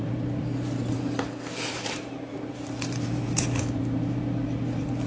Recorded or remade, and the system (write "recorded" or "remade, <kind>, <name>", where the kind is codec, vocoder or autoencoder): remade, vocoder, BigVGAN v2